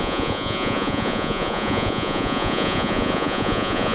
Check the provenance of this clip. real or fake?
fake